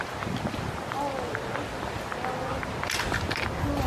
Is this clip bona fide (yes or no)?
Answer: yes